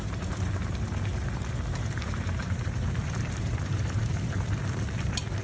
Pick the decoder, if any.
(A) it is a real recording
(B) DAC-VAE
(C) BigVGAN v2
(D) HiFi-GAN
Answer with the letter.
C